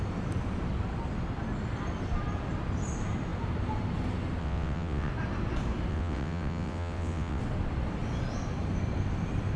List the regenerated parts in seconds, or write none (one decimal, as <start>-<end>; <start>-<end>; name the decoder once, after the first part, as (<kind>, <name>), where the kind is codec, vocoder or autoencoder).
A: 4.4-5.1 (vocoder, WaveNeXt); 5.9-7.4

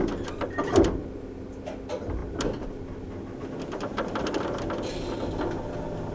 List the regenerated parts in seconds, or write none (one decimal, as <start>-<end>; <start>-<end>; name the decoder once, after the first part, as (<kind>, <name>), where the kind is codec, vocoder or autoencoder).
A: none

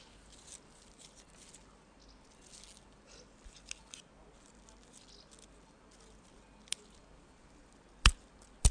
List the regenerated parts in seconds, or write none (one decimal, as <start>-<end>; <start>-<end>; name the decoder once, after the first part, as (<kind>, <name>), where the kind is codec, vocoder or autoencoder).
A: none

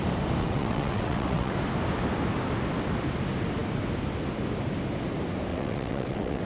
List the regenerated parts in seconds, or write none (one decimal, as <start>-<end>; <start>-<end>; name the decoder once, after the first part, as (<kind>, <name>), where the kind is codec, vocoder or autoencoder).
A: 0.4-1.5 (vocoder, WaveNeXt); 5.5-6.4

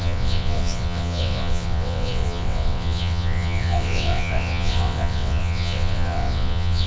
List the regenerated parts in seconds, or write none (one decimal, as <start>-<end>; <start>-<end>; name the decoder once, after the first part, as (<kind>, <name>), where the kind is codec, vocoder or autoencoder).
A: 0.0-6.9 (vocoder, WaveNeXt)

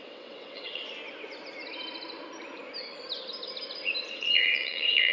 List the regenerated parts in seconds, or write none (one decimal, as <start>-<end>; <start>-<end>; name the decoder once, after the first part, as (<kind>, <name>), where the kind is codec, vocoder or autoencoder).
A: 0.0-1.0 (vocoder, WaveNeXt); 4.1-5.1